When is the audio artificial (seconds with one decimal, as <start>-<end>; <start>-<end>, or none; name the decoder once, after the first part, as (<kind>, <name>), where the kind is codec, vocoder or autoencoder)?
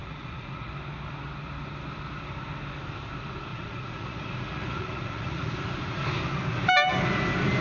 0.0-0.7 (vocoder, Vocos); 3.5-5.5